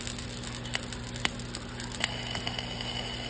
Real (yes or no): yes